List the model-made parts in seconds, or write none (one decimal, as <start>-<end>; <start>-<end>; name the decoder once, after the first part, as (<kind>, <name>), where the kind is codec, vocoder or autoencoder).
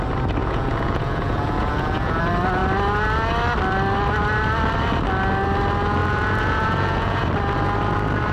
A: 0.4-2.2 (vocoder, Vocos); 6.0-7.2